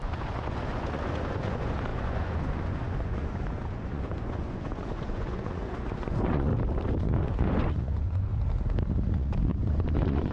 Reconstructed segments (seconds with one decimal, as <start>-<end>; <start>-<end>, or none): 0.0-6.5; 7.0-8.3; 9.1-10.3